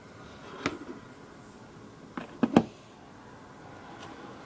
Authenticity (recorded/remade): recorded